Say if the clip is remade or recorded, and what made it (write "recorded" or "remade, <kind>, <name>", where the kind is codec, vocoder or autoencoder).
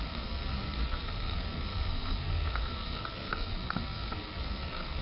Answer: remade, codec, SNAC